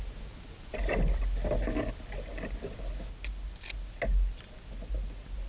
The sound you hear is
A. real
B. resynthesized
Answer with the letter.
A